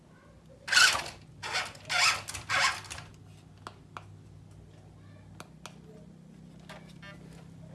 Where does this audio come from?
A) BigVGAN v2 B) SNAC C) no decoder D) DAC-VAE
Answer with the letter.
C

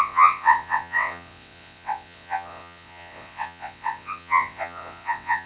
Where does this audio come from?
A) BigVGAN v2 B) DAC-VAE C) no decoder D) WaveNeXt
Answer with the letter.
D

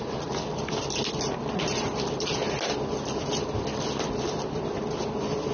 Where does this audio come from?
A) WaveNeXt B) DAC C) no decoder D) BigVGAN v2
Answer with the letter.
C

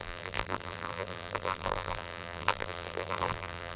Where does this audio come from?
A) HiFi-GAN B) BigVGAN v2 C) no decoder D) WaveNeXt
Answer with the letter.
B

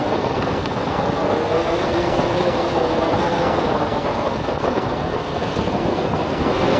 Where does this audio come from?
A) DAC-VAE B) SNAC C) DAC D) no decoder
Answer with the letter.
B